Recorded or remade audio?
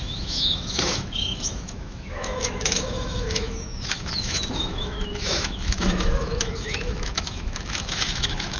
remade